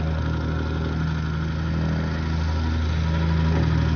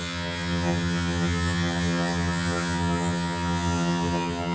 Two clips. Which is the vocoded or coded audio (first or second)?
second